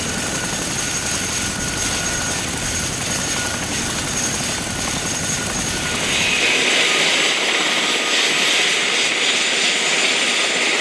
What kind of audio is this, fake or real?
real